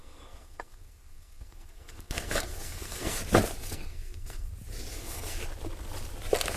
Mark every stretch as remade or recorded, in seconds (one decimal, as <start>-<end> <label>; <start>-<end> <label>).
0.0-3.2 remade; 3.2-3.6 recorded; 3.6-4.5 remade; 4.5-4.9 recorded; 4.9-5.4 remade; 5.4-6.6 recorded